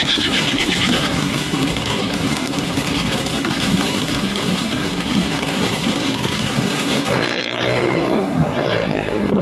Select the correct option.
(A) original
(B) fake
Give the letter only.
B